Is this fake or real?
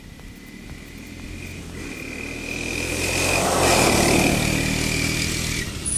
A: real